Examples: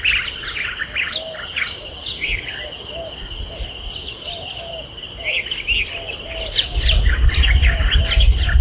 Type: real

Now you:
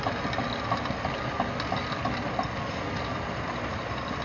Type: real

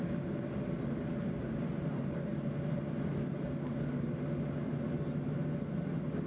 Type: real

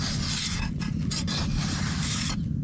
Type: real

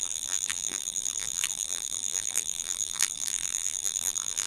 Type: fake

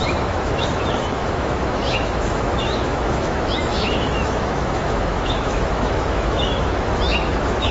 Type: fake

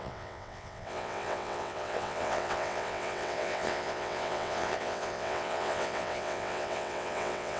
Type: fake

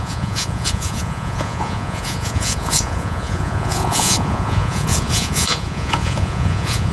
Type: fake